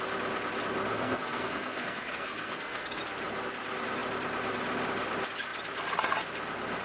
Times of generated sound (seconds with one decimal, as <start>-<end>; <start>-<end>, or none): 0.9-3.0